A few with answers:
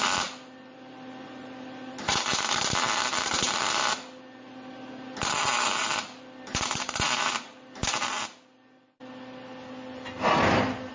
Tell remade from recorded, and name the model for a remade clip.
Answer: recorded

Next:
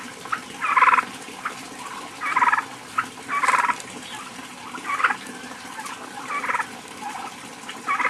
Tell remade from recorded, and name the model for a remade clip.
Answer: remade, vocoder, BigVGAN v2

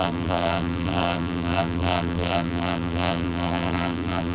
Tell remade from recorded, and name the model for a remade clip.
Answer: remade, vocoder, BigVGAN v2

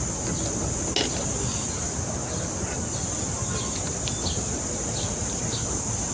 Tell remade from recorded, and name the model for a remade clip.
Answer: recorded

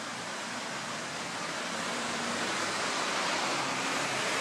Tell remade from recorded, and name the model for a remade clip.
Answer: remade, vocoder, BigVGAN v2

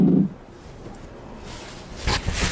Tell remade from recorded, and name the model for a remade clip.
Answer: recorded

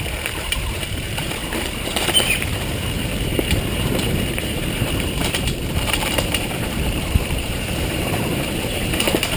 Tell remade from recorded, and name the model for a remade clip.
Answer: remade, vocoder, BigVGAN v2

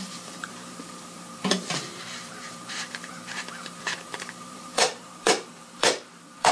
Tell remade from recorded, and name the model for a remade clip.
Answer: remade, vocoder, BigVGAN v2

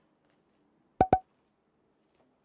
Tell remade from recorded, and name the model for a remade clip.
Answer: recorded